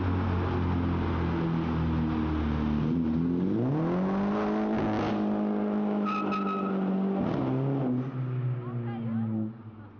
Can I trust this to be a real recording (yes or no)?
yes